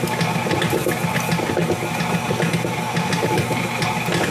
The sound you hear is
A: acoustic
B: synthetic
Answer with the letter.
A